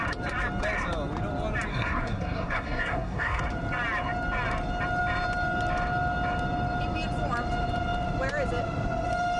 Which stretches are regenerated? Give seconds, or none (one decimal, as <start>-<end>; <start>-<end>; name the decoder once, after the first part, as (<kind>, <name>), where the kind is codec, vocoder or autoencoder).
1.7-3.4 (codec, SNAC)